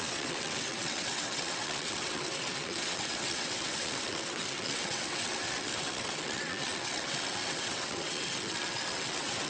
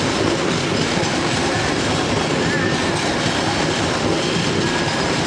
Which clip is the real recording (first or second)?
second